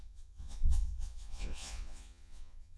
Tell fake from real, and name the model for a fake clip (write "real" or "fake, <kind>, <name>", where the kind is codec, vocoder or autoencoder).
fake, vocoder, Vocos